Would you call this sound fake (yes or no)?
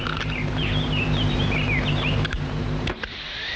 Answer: yes